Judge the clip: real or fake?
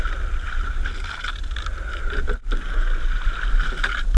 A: real